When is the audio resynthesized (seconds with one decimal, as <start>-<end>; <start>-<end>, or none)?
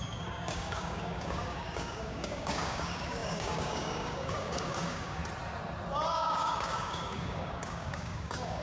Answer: 0.0-5.2; 6.1-8.6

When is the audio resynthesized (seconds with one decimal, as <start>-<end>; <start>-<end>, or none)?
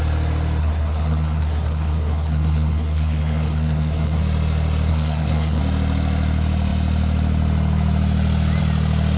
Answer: 0.6-4.2; 4.9-5.6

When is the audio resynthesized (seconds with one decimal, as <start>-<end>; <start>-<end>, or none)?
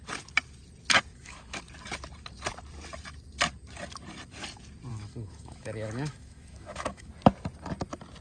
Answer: 1.1-1.6; 4.9-7.1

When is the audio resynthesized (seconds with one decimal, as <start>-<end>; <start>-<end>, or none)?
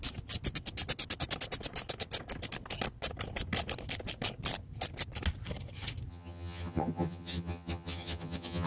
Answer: 6.1-8.7